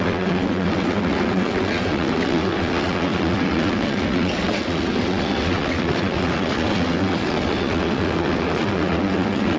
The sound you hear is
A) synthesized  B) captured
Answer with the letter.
A